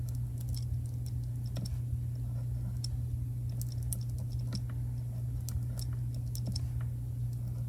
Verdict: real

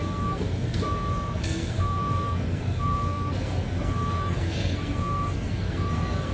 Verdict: fake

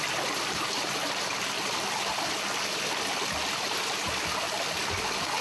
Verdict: real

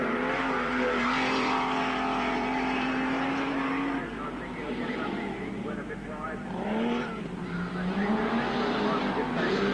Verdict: fake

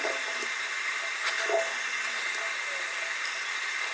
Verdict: real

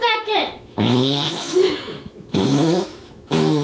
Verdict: fake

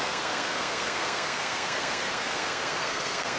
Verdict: fake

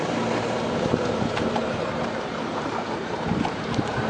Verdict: fake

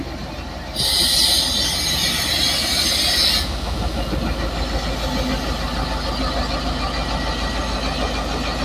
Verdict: real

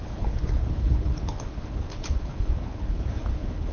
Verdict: fake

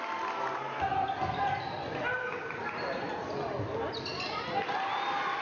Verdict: real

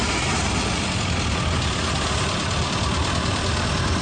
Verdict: real